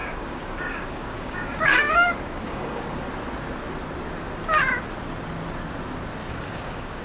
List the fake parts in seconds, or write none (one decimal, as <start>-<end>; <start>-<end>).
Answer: 0.0-3.0; 6.2-7.0